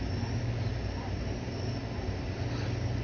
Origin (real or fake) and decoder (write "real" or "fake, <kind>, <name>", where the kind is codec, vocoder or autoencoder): real